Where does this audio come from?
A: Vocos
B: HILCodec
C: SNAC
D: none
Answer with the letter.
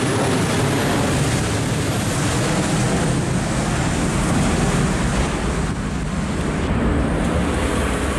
D